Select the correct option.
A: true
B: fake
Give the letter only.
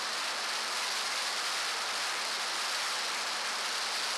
A